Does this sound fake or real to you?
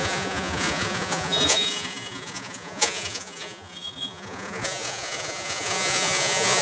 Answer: fake